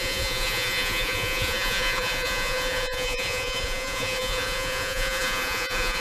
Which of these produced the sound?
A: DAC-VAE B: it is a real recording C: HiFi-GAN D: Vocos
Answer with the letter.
D